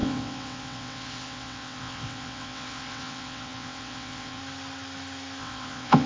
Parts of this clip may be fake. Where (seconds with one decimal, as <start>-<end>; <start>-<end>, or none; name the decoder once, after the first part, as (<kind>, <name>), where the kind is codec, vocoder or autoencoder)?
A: 0.0-4.4 (vocoder, WaveNeXt); 5.4-6.1